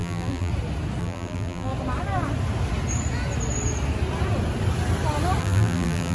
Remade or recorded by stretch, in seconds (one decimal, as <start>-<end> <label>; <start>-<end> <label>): 0.0-0.5 remade; 0.5-1.0 recorded; 1.0-1.7 remade; 1.7-5.4 recorded; 5.4-6.1 remade